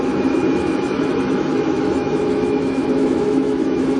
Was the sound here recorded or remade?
remade